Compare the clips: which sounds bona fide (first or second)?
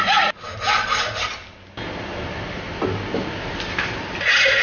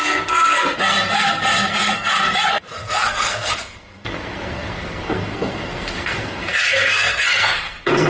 first